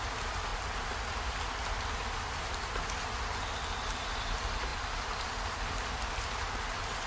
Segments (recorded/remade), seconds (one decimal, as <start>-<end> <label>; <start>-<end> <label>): 0.0-7.1 recorded